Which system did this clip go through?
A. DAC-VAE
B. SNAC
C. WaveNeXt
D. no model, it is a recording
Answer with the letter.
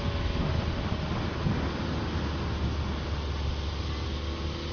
D